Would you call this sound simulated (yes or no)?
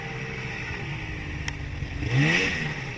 no